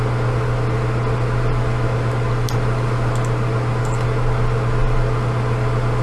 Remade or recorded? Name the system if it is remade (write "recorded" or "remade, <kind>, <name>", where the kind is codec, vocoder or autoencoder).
recorded